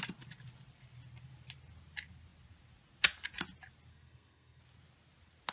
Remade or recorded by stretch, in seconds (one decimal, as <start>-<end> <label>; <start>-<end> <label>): 0.0-3.9 recorded; 3.9-4.6 remade; 4.6-5.5 recorded